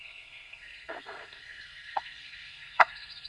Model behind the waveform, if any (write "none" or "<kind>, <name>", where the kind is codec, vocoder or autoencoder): codec, SNAC